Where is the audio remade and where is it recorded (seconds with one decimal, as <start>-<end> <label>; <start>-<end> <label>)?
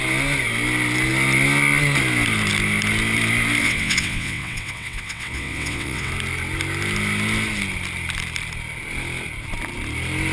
0.0-3.6 recorded; 3.6-6.1 remade; 6.1-10.3 recorded